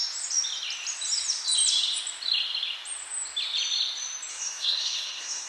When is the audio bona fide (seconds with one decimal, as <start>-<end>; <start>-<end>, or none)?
0.0-4.3

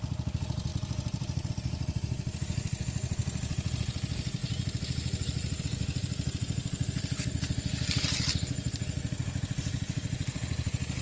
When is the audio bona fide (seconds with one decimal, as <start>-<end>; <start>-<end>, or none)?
0.0-11.0

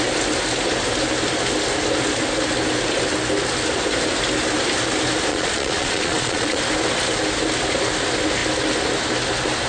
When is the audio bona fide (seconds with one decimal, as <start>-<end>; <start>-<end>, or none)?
0.0-5.3; 6.6-9.7

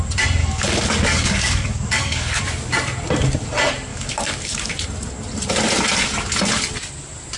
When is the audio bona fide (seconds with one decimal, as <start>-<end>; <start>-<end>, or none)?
0.0-0.4; 2.4-3.9; 4.7-7.4